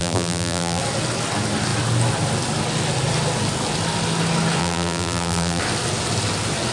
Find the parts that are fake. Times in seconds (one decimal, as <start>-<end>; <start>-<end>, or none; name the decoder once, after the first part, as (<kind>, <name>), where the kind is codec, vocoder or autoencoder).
0.0-0.8 (vocoder, BigVGAN v2); 4.6-5.6